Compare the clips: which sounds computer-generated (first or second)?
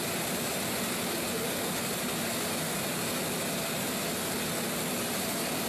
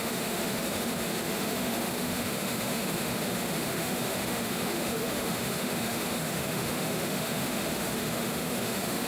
second